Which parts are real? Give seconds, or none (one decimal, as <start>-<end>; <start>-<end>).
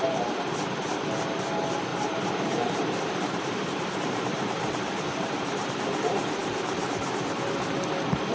0.0-1.9; 5.7-6.4; 7.3-8.3